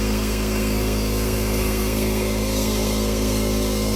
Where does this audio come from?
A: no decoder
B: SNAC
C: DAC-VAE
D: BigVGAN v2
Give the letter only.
B